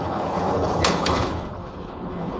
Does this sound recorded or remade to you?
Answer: remade